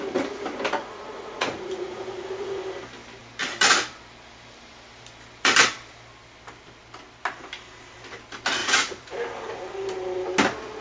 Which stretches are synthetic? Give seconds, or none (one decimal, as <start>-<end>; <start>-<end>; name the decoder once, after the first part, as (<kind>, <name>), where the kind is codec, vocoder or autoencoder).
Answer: 0.8-2.6 (vocoder, Vocos); 8.6-9.1